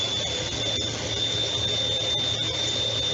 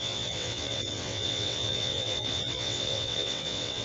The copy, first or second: second